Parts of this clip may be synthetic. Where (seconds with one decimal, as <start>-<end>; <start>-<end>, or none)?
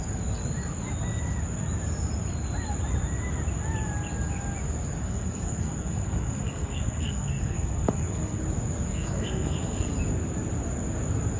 5.0-8.4; 8.9-9.9